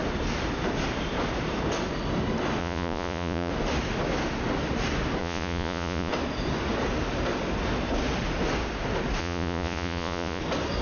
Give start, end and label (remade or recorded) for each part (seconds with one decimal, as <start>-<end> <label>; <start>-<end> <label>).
0.0-2.6 recorded; 2.6-3.5 remade; 3.5-5.2 recorded; 5.2-6.1 remade; 6.1-9.2 recorded; 9.2-10.4 remade; 10.4-10.8 recorded